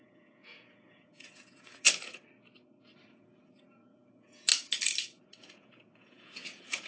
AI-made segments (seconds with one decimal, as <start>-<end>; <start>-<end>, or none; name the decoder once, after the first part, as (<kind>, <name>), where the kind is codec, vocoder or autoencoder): 0.0-2.2 (vocoder, Vocos); 3.1-4.5; 5.4-6.9

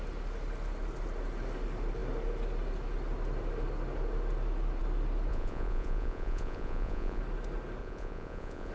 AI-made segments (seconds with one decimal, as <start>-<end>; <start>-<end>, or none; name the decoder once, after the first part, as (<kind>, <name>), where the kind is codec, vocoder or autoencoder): 5.3-7.2 (vocoder, Vocos); 7.8-8.7

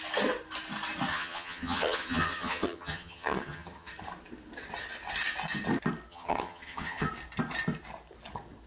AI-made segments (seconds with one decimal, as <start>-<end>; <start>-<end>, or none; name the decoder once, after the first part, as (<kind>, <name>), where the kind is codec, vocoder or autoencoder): 1.1-3.9 (vocoder, HiFi-GAN); 6.1-7.1

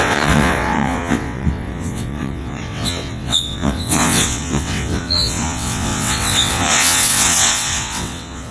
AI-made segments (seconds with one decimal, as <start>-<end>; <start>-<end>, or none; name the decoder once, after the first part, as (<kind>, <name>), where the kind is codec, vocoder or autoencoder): 0.0-8.5 (vocoder, WaveNeXt)